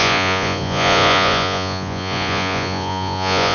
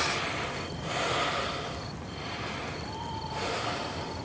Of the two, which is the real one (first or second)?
second